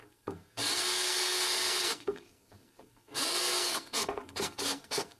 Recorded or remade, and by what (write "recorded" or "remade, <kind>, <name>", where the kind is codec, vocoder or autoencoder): remade, codec, SNAC